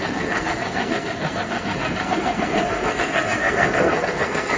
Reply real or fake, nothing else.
fake